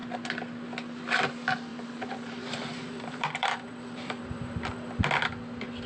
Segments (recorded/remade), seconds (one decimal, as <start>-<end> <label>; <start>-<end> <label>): 0.0-1.7 recorded; 1.7-5.0 remade; 5.0-5.9 recorded